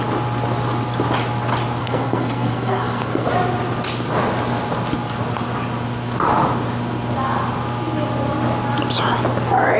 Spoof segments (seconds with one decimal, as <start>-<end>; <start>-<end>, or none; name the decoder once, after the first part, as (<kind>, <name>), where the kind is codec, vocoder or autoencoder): 1.8-3.3 (codec, SNAC)